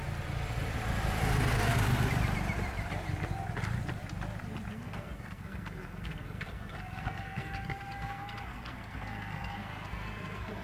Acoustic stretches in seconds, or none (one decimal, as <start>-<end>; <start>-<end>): 0.0-4.7